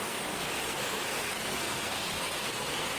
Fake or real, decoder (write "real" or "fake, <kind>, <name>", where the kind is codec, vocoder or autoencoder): fake, codec, SNAC